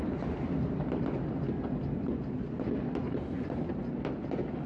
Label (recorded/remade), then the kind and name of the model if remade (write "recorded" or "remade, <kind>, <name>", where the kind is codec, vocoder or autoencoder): recorded